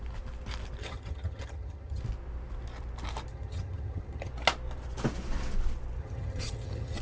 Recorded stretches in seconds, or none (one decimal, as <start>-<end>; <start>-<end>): 0.0-0.8; 2.0-3.3; 4.3-6.0